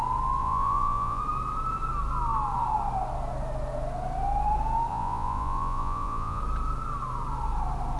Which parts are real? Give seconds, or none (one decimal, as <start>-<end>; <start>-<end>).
0.0-0.4; 1.2-4.9; 6.4-8.0